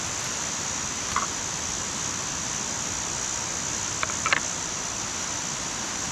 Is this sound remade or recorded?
recorded